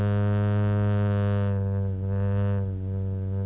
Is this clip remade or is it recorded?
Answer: recorded